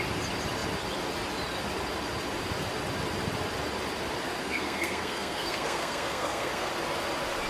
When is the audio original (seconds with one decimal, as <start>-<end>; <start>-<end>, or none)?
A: 0.0-4.4; 6.7-7.5